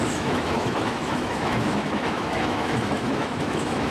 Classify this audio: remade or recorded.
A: remade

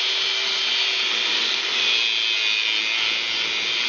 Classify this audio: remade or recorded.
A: recorded